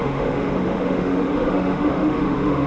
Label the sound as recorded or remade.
remade